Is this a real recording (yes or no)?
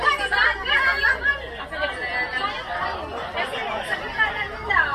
yes